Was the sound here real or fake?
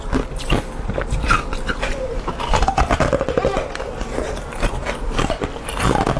real